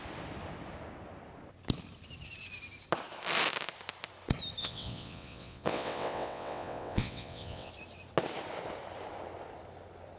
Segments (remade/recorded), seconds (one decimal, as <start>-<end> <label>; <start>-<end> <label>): 0.0-4.6 recorded; 4.6-7.7 remade; 7.7-10.2 recorded